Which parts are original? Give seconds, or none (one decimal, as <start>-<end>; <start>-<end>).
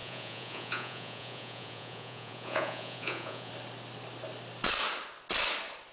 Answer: 3.5-5.9